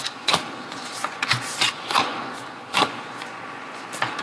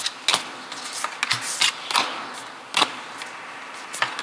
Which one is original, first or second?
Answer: second